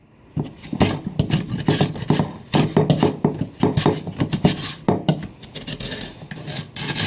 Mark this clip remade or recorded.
recorded